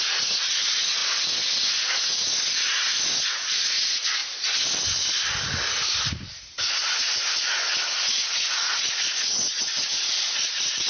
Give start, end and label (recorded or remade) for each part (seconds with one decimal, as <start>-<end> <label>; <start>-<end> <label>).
0.0-4.2 remade; 4.2-6.4 recorded; 6.4-7.2 remade; 7.2-8.1 recorded; 8.1-10.9 remade

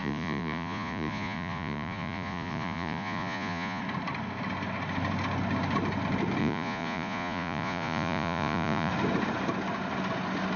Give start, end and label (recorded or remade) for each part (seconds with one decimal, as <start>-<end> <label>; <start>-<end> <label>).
0.0-3.8 remade; 3.8-6.4 recorded; 6.4-8.9 remade; 8.9-10.6 recorded

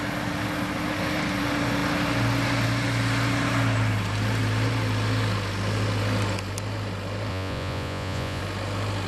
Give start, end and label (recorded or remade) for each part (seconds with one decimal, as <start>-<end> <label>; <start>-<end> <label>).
0.0-7.3 recorded; 7.3-8.4 remade; 8.4-9.1 recorded

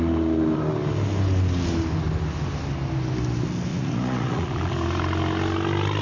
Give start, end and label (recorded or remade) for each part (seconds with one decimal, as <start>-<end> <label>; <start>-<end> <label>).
0.0-3.7 recorded; 3.7-4.7 remade; 4.7-6.0 recorded

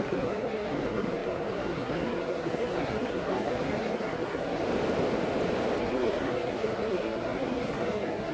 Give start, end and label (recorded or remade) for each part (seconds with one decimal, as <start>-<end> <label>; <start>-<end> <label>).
0.0-4.6 remade; 4.6-5.8 recorded; 5.8-8.3 remade

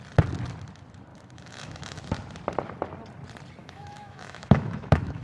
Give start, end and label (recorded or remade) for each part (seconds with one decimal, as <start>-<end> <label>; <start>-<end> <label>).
0.0-1.1 recorded; 1.1-2.0 remade; 2.0-3.6 recorded; 3.6-5.2 remade

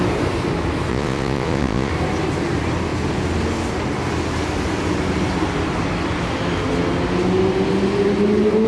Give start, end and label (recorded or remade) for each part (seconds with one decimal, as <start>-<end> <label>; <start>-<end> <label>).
0.0-0.9 recorded; 0.9-1.9 remade; 1.9-8.7 recorded

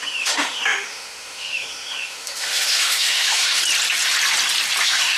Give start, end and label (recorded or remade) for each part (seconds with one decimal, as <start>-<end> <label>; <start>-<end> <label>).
0.0-3.6 remade; 3.6-4.8 recorded; 4.8-5.2 remade